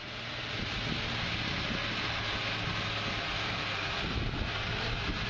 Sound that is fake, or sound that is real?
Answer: real